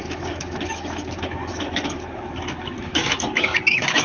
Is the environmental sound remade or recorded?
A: remade